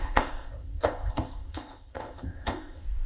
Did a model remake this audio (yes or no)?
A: yes